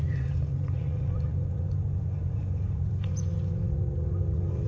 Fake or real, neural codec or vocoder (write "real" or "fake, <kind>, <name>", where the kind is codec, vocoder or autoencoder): fake, vocoder, Vocos